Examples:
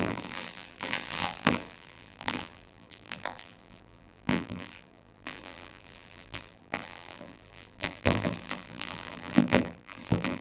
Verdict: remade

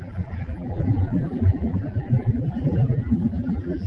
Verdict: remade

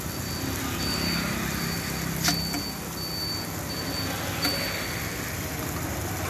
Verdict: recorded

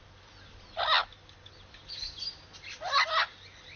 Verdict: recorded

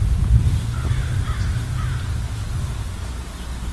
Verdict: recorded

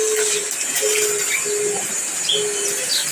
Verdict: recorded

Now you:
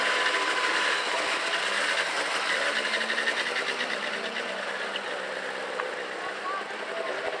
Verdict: recorded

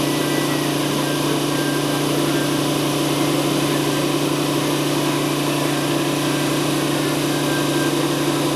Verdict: recorded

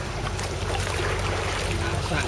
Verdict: recorded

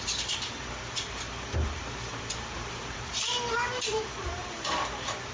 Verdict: remade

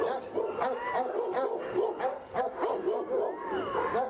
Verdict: recorded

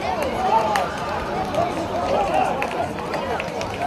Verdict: remade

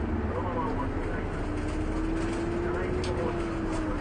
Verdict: recorded